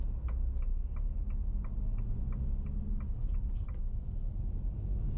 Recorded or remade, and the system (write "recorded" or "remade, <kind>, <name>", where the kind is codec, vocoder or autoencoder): recorded